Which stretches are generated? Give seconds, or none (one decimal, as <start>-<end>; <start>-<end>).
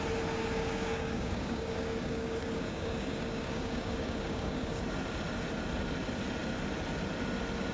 0.4-4.8